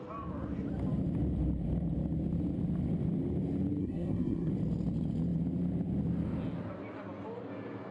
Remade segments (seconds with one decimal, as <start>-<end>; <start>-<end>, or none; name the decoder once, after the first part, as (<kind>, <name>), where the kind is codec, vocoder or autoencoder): 3.8-4.5 (codec, SNAC)